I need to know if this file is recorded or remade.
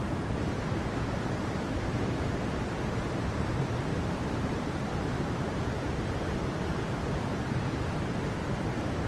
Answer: remade